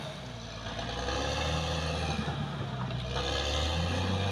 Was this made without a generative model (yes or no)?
yes